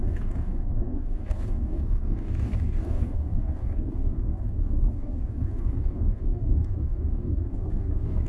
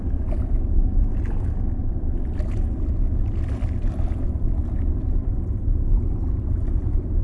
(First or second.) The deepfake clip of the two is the first